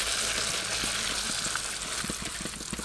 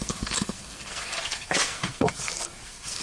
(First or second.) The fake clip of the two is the second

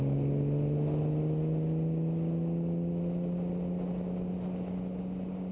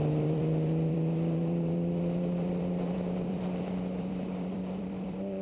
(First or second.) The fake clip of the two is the second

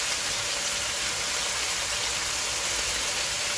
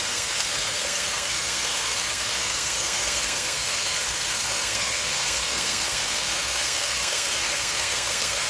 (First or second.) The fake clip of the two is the second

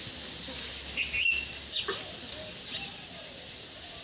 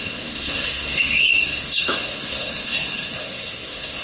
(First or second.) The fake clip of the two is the second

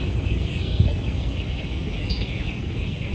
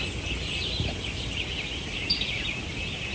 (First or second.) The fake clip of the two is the first